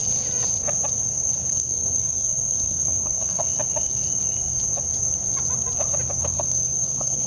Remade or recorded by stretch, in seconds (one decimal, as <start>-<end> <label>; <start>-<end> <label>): 0.0-1.5 recorded; 1.5-3.4 remade; 3.4-6.2 recorded; 6.2-7.3 remade